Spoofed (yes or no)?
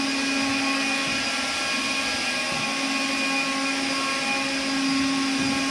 no